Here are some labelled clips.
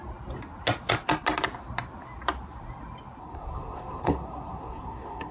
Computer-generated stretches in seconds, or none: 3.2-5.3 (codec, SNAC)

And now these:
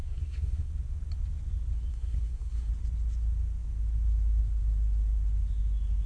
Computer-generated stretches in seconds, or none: 0.0-0.7 (codec, SNAC); 1.9-2.7

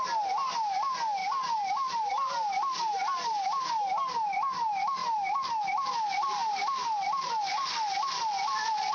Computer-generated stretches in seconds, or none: none

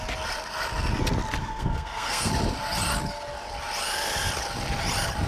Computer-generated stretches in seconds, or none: 1.4-2.3 (codec, SNAC)